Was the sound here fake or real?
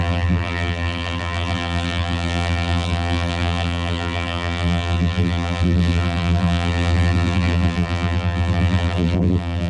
fake